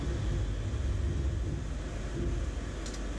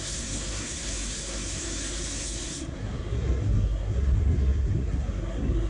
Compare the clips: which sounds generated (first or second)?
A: second